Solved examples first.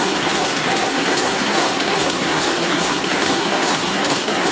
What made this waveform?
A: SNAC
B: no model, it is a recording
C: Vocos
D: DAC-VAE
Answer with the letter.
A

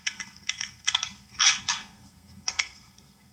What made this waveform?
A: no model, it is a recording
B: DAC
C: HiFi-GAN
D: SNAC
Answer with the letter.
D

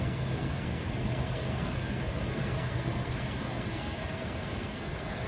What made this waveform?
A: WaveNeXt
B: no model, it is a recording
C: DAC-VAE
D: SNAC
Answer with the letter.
D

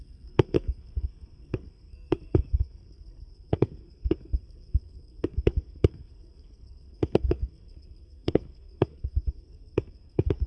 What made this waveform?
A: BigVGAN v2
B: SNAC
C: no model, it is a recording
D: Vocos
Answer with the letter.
B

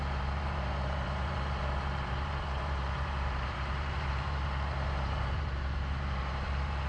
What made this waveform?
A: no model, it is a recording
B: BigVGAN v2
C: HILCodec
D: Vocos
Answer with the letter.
B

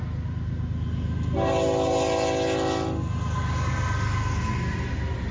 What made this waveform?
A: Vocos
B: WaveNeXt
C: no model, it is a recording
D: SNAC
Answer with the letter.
C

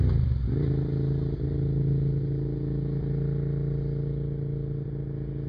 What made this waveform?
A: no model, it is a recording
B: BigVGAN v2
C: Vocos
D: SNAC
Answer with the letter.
A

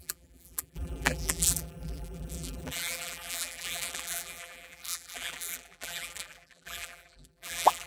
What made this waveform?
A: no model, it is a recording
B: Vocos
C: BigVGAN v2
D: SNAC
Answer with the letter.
C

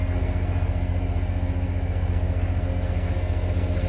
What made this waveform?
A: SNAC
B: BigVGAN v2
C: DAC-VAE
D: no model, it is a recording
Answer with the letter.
A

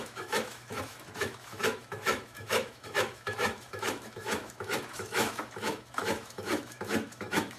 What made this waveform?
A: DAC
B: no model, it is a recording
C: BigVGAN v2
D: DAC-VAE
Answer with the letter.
D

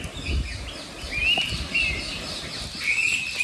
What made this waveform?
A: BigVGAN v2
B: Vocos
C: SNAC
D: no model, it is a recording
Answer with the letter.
D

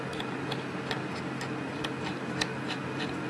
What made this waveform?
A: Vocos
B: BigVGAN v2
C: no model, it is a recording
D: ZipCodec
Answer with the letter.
C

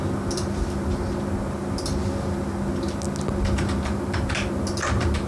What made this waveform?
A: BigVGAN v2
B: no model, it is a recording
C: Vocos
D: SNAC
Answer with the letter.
B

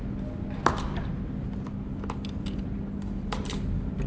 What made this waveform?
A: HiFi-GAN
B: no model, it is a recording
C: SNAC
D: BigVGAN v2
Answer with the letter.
B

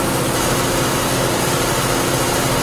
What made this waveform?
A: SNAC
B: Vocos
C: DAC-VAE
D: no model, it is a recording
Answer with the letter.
D